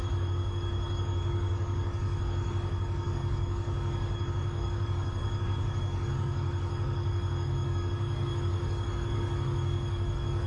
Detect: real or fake fake